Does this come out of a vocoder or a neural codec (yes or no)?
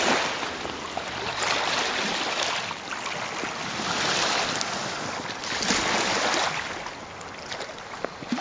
no